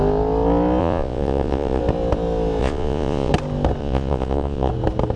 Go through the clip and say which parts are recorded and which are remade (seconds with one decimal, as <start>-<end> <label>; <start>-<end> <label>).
0.0-0.8 recorded; 0.8-1.8 remade; 1.8-2.6 recorded; 2.6-3.3 remade; 3.3-3.8 recorded; 3.8-4.7 remade; 4.7-5.2 recorded